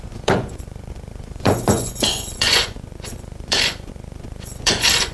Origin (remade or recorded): remade